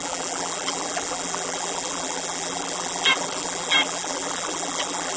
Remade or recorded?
remade